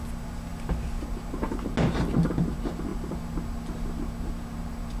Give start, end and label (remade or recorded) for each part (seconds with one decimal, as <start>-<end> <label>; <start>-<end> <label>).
0.0-5.0 recorded